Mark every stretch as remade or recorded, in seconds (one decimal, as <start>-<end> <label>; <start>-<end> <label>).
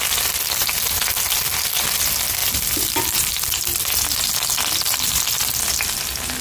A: 0.0-2.4 recorded; 2.4-5.4 remade; 5.4-6.4 recorded